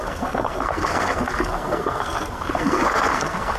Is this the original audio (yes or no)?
no